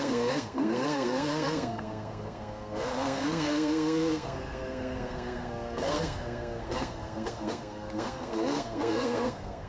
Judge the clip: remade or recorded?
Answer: remade